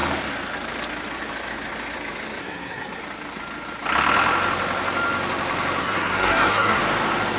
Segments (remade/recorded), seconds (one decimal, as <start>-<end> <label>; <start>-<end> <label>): 0.0-2.4 recorded; 2.4-3.0 remade; 3.0-5.8 recorded; 5.8-6.8 remade; 6.8-7.4 recorded